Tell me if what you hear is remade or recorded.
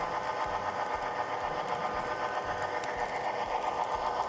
remade